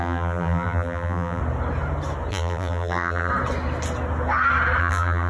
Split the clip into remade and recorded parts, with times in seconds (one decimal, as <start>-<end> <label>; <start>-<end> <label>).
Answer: 0.0-1.4 remade; 1.4-2.3 recorded; 2.3-3.3 remade; 3.3-4.8 recorded; 4.8-5.3 remade